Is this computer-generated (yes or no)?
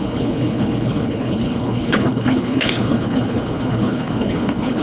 yes